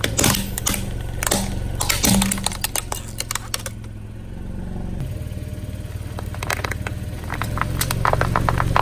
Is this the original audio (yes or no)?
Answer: yes